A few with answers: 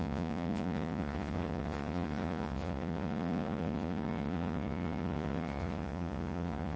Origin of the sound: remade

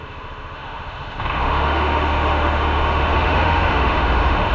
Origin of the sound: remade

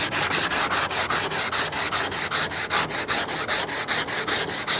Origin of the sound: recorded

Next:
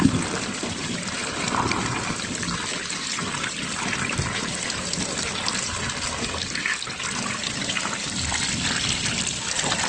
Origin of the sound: recorded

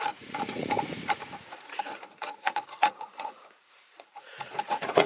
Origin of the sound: remade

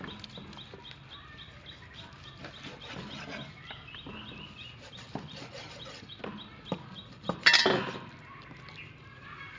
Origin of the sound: recorded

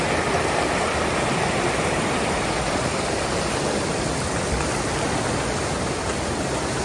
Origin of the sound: recorded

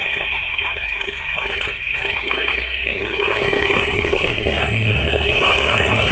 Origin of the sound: remade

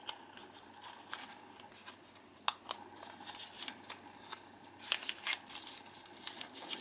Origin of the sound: recorded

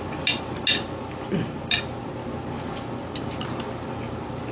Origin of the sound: recorded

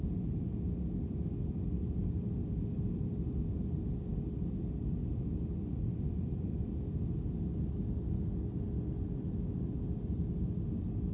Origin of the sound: recorded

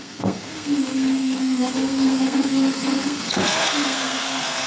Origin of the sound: remade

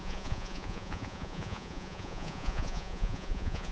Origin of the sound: remade